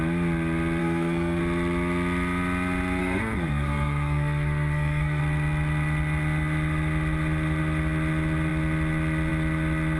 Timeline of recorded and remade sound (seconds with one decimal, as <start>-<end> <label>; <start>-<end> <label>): 0.0-0.8 recorded; 0.8-1.4 remade; 1.4-3.0 recorded; 3.0-5.2 remade; 5.2-10.0 recorded